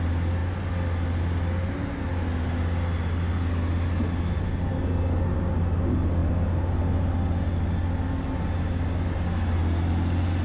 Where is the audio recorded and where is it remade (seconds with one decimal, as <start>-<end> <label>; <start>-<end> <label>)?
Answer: 0.0-10.4 recorded